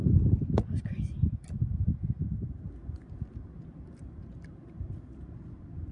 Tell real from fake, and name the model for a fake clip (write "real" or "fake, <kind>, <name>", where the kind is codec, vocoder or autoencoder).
fake, vocoder, BigVGAN v2